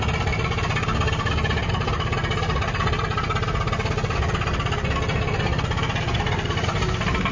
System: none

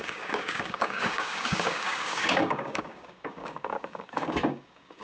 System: codec, DAC